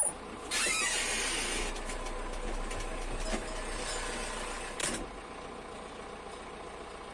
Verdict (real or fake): real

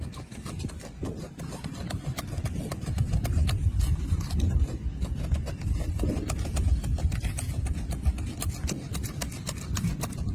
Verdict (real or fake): real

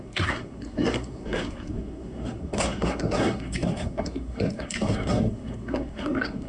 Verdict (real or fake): fake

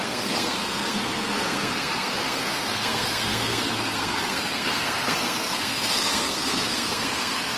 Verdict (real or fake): fake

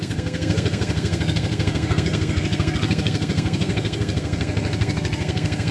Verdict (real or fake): fake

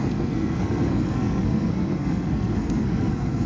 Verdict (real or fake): fake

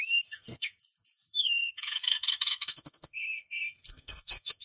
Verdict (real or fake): fake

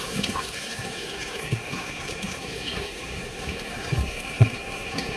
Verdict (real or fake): fake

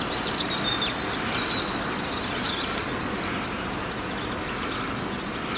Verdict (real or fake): real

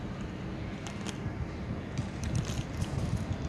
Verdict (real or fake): real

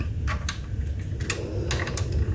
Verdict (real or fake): real